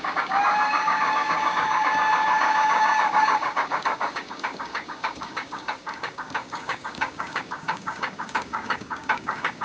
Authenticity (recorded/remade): remade